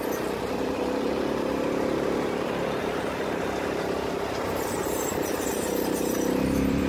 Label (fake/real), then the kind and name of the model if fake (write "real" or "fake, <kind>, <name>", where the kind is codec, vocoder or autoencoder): fake, vocoder, BigVGAN v2